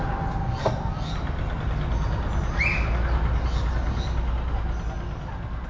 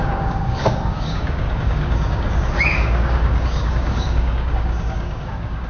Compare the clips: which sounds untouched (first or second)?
first